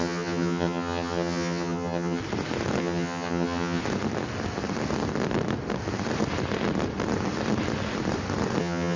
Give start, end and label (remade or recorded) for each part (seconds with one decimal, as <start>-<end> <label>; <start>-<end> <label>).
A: 0.0-2.2 remade; 2.2-2.8 recorded; 2.8-3.8 remade; 3.8-8.6 recorded; 8.6-9.0 remade